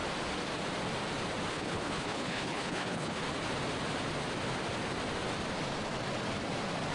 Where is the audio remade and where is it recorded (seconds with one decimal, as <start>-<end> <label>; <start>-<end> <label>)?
0.0-1.5 recorded; 1.5-3.2 remade; 3.2-6.9 recorded